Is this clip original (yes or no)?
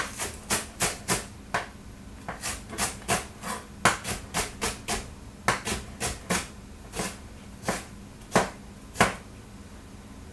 yes